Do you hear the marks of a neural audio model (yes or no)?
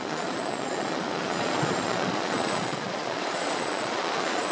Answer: yes